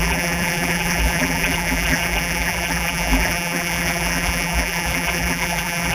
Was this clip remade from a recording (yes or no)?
yes